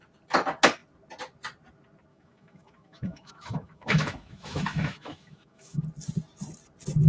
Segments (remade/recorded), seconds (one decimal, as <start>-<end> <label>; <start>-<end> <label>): 0.0-2.1 recorded; 2.1-5.8 remade; 5.8-7.1 recorded